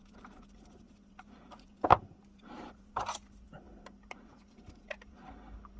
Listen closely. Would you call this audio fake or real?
real